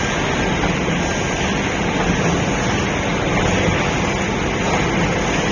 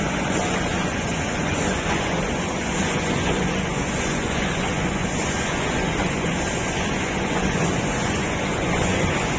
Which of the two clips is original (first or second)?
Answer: first